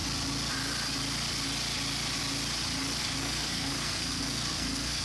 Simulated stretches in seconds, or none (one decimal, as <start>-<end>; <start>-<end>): 3.0-5.0